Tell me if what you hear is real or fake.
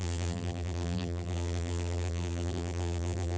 fake